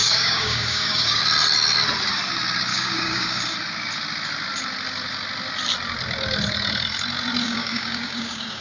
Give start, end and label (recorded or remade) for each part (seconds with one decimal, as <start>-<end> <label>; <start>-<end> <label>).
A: 0.0-1.2 remade; 1.2-2.7 recorded; 2.7-3.4 remade; 3.4-7.4 recorded; 7.4-8.6 remade